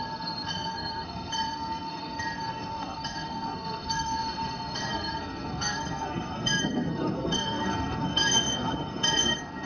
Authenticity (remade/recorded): remade